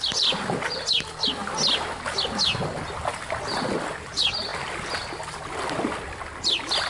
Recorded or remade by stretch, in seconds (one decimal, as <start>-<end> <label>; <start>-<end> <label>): 0.0-6.9 recorded